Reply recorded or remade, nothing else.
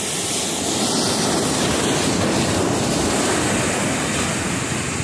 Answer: recorded